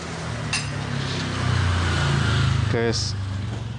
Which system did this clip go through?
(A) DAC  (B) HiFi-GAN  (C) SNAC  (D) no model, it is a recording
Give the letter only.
D